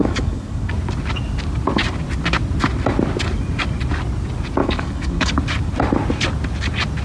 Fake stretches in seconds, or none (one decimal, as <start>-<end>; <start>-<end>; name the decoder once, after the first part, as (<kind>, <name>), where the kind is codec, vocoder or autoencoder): 0.0-0.7 (codec, DAC); 4.6-5.3